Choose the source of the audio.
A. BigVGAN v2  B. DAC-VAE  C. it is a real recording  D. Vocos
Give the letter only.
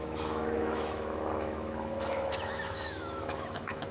B